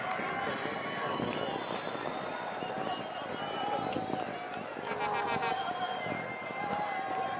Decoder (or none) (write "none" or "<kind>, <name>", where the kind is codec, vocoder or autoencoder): none